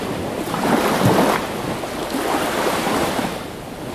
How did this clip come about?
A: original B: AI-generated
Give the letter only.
A